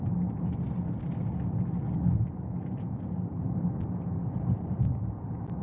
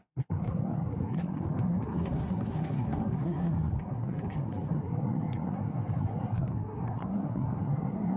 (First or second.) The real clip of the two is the first